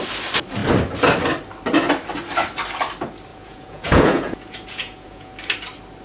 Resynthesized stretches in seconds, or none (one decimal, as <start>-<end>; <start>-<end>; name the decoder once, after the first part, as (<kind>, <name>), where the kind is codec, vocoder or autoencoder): 3.3-5.3 (vocoder, Vocos)